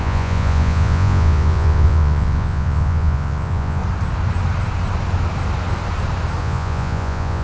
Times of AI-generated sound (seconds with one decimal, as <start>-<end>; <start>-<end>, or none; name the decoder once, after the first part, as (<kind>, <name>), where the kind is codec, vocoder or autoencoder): 0.0-3.8 (vocoder, Vocos); 6.4-7.4